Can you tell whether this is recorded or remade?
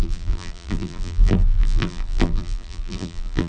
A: remade